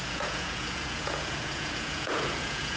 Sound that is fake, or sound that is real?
fake